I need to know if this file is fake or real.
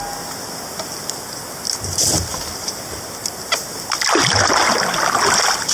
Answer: real